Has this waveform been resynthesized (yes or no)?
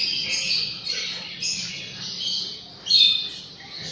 no